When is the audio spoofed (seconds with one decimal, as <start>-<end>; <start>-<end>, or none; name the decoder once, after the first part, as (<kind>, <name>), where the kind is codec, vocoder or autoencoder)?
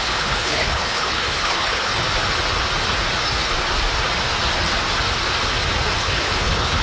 0.0-1.9 (codec, HILCodec); 6.0-6.8